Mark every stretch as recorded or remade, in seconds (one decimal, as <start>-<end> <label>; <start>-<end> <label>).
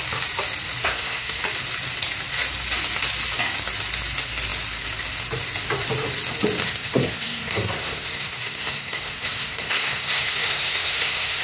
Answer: 0.0-0.8 recorded; 0.8-1.4 remade; 1.4-6.6 recorded; 6.6-11.4 remade